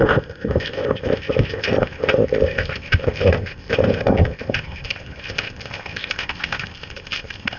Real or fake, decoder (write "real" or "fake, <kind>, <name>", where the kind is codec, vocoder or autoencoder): fake, codec, ZipCodec